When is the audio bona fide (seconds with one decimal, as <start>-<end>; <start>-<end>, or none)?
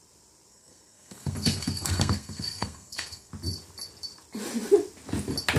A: 0.0-0.5; 3.3-5.6